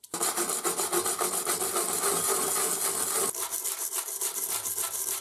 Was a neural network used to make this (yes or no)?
no